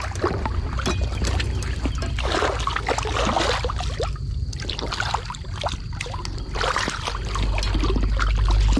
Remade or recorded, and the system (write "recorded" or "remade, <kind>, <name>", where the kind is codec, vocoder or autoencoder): recorded